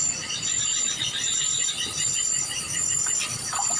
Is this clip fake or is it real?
real